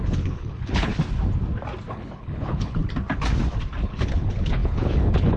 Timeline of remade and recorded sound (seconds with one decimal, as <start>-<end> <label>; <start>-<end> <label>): 0.0-0.9 remade; 0.9-1.9 recorded; 1.9-2.8 remade; 2.8-3.8 recorded; 3.8-5.4 remade